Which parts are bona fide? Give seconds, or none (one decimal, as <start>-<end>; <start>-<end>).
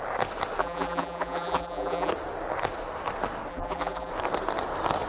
0.0-0.6; 2.1-3.5; 4.1-5.1